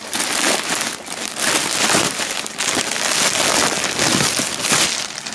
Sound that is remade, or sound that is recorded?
recorded